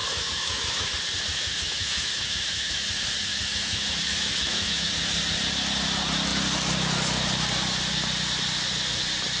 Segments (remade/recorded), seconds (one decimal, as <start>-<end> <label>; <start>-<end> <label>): 0.0-0.9 remade; 0.9-1.3 recorded; 1.3-2.9 remade; 2.9-3.3 recorded; 3.3-4.9 remade; 4.9-9.4 recorded